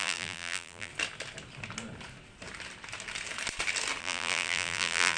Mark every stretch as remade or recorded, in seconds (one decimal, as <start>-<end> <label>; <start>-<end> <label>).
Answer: 0.0-0.9 remade; 0.9-4.0 recorded; 4.0-5.2 remade